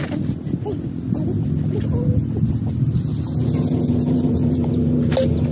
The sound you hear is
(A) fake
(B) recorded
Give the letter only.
B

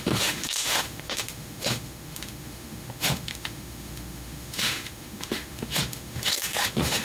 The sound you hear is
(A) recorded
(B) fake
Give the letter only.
B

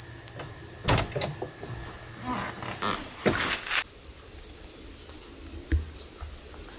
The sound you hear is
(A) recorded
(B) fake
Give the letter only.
A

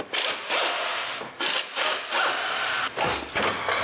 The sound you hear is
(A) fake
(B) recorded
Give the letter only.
B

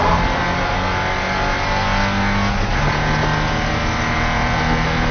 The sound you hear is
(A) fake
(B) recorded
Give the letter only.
B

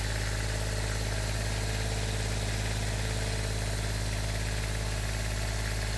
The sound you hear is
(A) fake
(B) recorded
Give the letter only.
B